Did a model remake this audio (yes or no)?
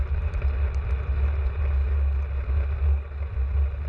no